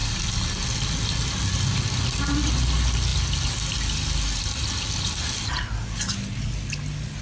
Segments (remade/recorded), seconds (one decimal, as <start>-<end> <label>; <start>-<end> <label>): 0.0-7.2 recorded

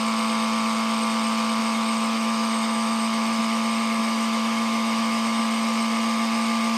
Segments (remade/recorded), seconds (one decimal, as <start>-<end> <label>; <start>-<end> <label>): 0.0-1.6 recorded; 1.6-3.4 remade; 3.4-4.0 recorded; 4.0-5.4 remade; 5.4-6.8 recorded

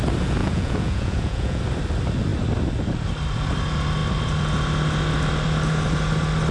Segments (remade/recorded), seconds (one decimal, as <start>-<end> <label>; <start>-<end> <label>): 0.0-0.4 recorded; 0.4-1.6 remade; 1.6-6.5 recorded

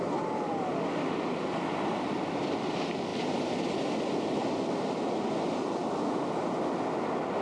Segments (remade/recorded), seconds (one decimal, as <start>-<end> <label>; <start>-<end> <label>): 0.0-7.4 recorded

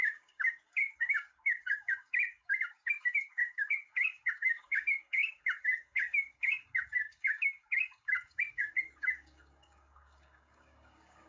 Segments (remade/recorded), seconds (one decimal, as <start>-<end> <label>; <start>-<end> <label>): 0.0-11.3 remade